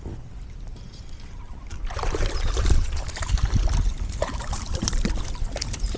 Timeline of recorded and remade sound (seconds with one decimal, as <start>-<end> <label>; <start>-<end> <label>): 0.0-0.7 recorded; 0.7-3.3 remade; 3.3-3.9 recorded; 3.9-4.9 remade; 4.9-6.0 recorded